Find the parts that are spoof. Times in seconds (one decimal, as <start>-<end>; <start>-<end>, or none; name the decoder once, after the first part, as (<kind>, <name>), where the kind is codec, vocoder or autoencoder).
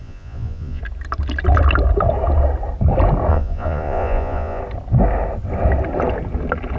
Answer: 0.0-0.8 (vocoder, Vocos); 3.3-4.6